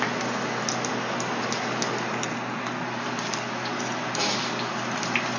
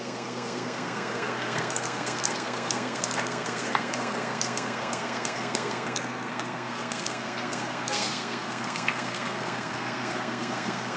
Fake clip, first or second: second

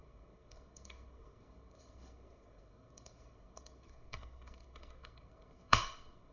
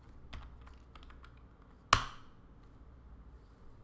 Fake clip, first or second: first